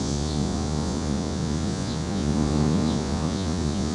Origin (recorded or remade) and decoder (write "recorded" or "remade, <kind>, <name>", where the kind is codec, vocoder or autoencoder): remade, vocoder, Vocos